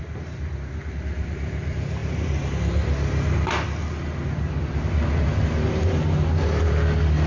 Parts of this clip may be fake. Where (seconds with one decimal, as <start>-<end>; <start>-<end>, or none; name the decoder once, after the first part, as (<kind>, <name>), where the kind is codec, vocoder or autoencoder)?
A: none